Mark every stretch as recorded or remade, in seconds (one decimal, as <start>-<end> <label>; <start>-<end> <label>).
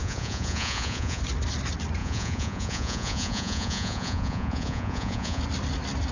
0.0-1.2 remade; 1.2-2.0 recorded; 2.0-5.4 remade; 5.4-6.1 recorded